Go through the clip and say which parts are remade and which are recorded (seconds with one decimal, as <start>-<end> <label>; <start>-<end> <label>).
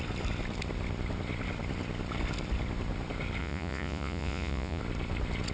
0.0-3.4 recorded; 3.4-4.8 remade; 4.8-5.5 recorded